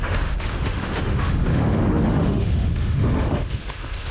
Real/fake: fake